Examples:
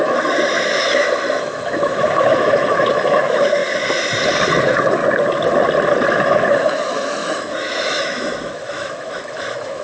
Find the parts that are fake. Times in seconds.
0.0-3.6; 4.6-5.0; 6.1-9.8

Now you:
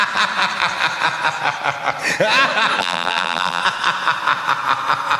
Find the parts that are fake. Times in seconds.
2.8-3.6

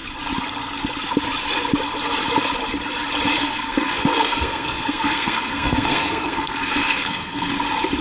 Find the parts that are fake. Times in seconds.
3.4-7.5

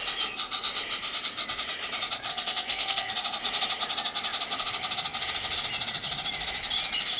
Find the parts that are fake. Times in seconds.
2.3-3.1